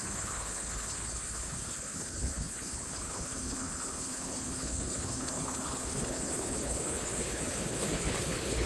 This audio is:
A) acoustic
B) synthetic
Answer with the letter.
B